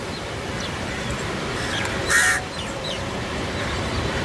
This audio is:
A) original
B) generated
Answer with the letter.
B